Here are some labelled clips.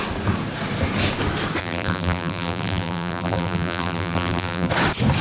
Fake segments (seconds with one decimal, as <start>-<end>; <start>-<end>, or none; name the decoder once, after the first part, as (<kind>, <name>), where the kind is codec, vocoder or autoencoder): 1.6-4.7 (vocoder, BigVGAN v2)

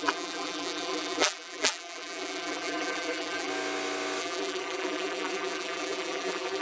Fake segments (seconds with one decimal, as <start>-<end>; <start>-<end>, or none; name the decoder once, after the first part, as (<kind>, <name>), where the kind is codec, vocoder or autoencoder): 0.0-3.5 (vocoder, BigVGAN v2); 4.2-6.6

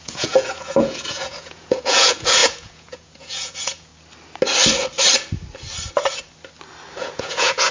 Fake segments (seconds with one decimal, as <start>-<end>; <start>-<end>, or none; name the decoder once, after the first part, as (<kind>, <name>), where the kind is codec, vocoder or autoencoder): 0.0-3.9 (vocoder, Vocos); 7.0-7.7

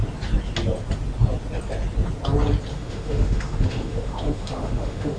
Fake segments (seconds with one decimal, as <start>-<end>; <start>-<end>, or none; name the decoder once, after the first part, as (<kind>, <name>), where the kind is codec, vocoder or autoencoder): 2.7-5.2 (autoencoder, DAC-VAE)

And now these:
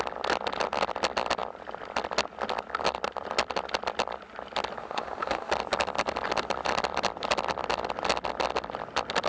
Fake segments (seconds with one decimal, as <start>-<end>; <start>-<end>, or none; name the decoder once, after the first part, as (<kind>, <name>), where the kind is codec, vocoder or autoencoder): 4.8-5.5 (autoencoder, DAC-VAE)